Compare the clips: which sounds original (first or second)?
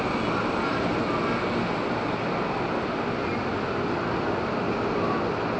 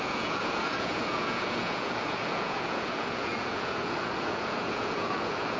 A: first